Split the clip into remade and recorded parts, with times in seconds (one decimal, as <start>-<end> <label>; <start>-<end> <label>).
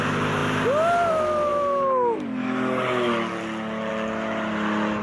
0.0-5.0 recorded